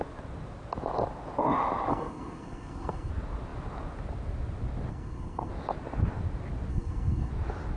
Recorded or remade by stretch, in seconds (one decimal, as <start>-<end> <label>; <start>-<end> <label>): 0.0-1.9 recorded; 1.9-3.1 remade; 3.1-4.9 recorded; 4.9-5.5 remade; 5.5-6.7 recorded; 6.7-7.3 remade; 7.3-7.8 recorded